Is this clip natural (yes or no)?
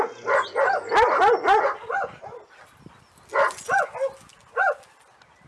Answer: yes